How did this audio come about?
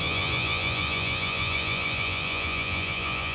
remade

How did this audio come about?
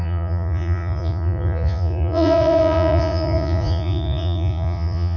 remade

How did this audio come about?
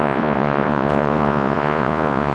remade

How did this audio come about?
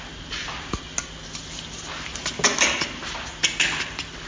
recorded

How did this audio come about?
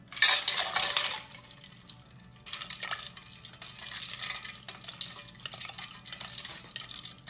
recorded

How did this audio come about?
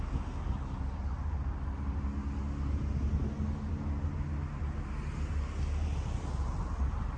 recorded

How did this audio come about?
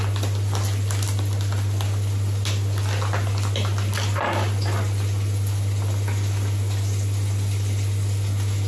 recorded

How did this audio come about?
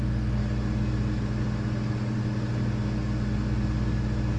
recorded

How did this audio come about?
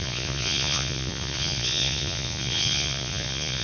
remade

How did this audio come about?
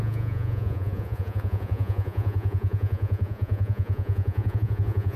remade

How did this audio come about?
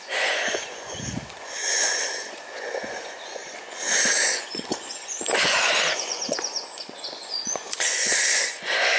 remade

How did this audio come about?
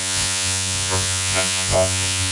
remade